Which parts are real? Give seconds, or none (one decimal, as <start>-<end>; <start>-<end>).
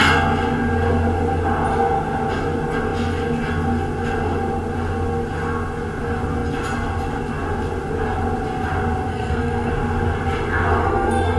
0.0-9.1; 9.7-10.8